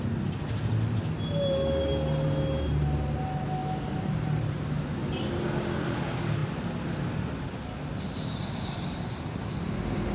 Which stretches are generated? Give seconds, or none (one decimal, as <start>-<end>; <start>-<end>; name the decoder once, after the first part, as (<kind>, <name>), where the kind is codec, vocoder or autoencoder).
none